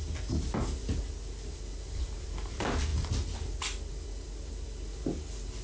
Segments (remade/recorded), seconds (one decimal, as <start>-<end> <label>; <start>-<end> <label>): 0.0-5.6 recorded